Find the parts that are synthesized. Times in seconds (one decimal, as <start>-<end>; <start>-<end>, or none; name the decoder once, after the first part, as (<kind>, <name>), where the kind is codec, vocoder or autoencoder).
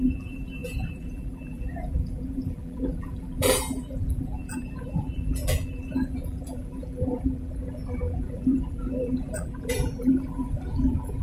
0.0-11.2 (vocoder, BigVGAN v2)